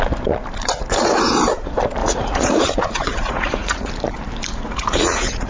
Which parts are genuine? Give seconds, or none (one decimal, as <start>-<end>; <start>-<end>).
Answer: 0.0-2.0; 3.9-4.5